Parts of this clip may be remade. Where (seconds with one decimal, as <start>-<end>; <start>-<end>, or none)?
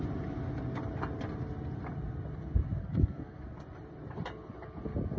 2.8-3.4